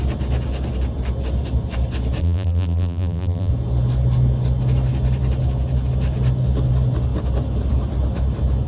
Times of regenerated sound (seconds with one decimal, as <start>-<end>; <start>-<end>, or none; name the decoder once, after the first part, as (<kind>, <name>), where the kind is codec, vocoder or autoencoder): 2.2-3.5 (vocoder, BigVGAN v2)